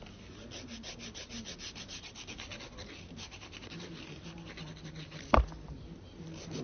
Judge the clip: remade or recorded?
recorded